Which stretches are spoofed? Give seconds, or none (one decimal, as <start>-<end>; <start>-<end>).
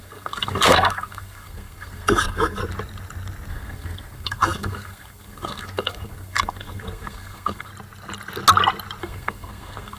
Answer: 0.0-2.6; 3.5-7.7; 9.0-10.0